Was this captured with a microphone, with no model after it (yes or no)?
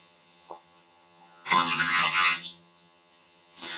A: no